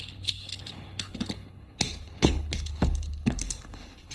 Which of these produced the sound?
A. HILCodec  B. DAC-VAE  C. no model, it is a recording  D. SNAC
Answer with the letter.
A